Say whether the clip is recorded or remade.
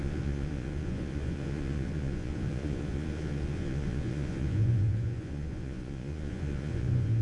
remade